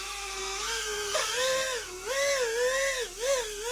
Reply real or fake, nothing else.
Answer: fake